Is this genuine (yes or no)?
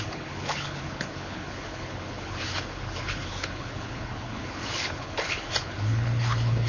no